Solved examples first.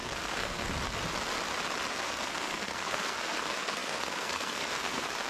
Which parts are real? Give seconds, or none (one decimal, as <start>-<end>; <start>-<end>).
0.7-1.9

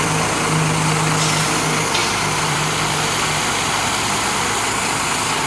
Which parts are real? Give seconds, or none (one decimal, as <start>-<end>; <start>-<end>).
0.0-2.0; 2.8-5.5

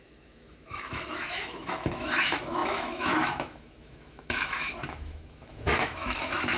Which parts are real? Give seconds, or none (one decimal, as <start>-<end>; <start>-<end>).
none

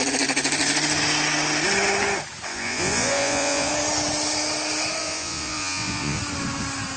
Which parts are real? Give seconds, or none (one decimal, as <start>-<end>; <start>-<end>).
0.0-2.5; 3.7-5.0; 6.2-7.0

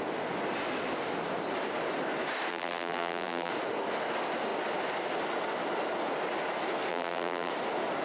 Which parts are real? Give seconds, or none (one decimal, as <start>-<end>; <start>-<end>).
0.0-2.5; 3.5-6.9; 7.5-8.0

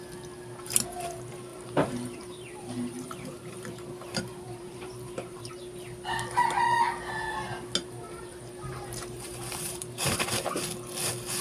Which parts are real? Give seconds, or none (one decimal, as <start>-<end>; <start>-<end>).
0.0-1.5; 5.5-7.8; 10.6-11.4

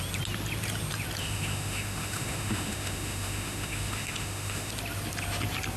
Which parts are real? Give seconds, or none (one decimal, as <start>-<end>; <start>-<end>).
0.0-1.2; 4.7-5.8